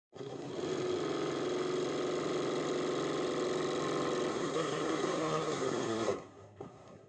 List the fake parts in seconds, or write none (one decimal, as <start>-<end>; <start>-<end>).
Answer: 0.0-0.5; 4.3-7.1